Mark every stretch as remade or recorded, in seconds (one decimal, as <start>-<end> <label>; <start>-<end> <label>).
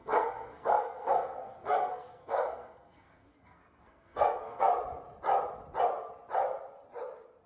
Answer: 0.0-4.7 remade; 4.7-7.5 recorded